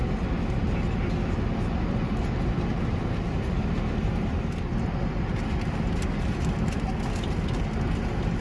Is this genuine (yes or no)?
yes